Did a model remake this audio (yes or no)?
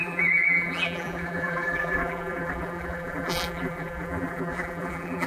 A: yes